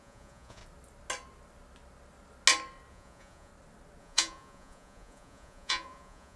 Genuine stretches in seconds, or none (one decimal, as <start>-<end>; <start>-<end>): 0.6-2.9; 3.5-4.0